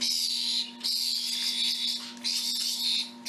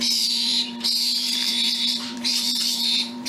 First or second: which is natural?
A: first